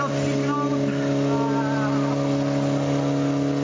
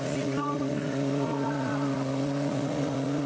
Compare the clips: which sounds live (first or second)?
first